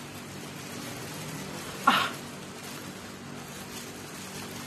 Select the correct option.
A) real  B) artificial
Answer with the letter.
A